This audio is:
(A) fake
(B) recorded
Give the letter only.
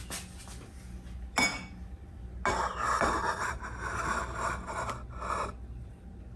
B